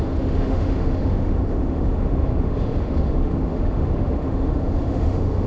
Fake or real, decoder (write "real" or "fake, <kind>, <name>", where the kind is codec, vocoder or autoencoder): fake, autoencoder, DAC-VAE